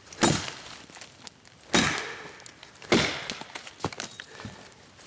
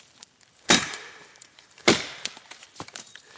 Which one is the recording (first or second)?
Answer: first